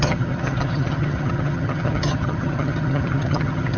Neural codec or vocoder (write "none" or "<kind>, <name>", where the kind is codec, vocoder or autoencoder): vocoder, HiFi-GAN